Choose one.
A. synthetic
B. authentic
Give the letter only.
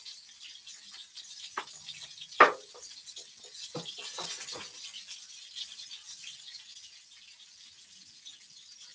B